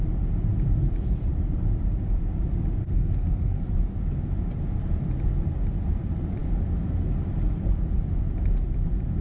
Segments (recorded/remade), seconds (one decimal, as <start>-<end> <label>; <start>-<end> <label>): 0.0-2.8 recorded; 2.8-3.6 remade; 3.6-9.2 recorded